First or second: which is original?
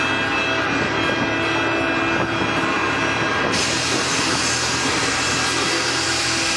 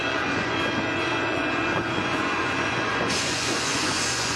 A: first